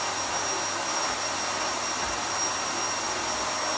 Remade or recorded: recorded